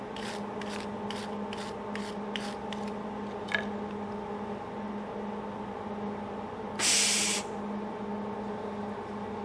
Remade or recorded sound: recorded